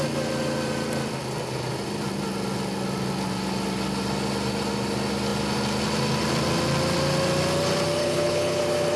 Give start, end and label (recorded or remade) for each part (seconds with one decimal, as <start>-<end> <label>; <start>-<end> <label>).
0.0-8.0 recorded; 8.0-8.6 remade; 8.6-9.0 recorded